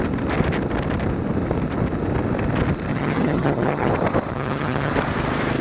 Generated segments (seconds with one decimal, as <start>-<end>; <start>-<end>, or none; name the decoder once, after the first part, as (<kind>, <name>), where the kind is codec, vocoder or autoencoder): 2.9-3.9 (vocoder, HiFi-GAN); 4.3-4.9